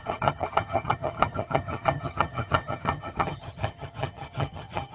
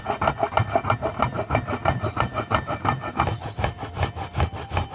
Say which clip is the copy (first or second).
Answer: first